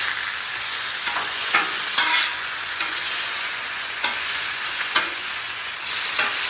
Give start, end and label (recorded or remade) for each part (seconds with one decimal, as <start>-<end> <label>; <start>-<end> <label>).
0.0-0.5 recorded; 0.5-1.8 remade; 1.8-2.3 recorded; 2.3-5.7 remade; 5.7-6.5 recorded